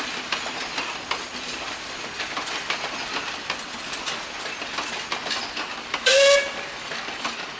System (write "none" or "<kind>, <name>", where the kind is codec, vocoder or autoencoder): none